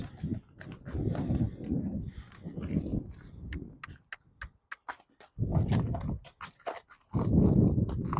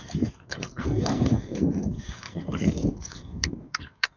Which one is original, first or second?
first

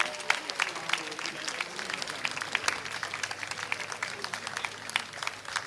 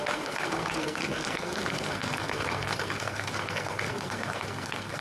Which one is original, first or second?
first